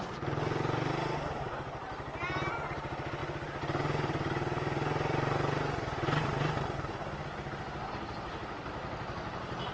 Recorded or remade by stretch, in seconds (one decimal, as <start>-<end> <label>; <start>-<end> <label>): 0.0-9.7 recorded

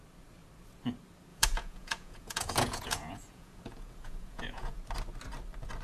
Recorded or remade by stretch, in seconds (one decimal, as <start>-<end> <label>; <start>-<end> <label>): 0.0-1.3 recorded; 1.3-4.8 remade; 4.8-5.8 recorded

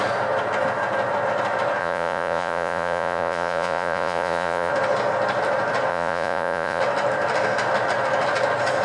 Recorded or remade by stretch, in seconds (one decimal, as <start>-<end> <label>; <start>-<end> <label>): 0.0-1.8 recorded; 1.8-4.7 remade; 4.7-5.9 recorded; 5.9-6.8 remade; 6.8-8.8 recorded

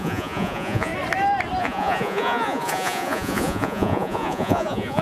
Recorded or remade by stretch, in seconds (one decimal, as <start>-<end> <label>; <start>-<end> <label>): 0.0-0.9 remade; 0.9-1.6 recorded; 1.6-5.0 remade

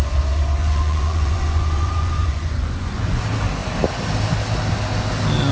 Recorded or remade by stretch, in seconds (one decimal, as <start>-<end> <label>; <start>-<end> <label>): 0.0-0.6 recorded; 0.6-3.2 remade; 3.2-5.5 recorded

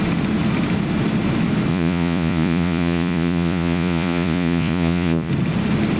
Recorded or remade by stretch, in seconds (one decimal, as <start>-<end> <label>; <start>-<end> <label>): 0.0-1.7 recorded; 1.7-5.3 remade; 5.3-6.0 recorded

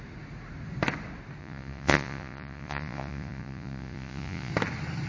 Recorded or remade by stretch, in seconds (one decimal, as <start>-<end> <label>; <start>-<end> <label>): 0.0-1.4 recorded; 1.4-4.5 remade; 4.5-5.1 recorded